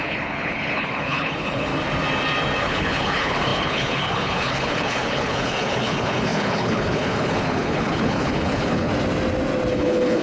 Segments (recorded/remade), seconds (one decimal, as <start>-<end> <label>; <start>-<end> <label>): 0.0-1.7 remade; 1.7-2.6 recorded; 2.6-8.9 remade; 8.9-9.7 recorded; 9.7-10.2 remade